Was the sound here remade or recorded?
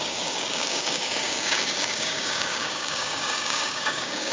remade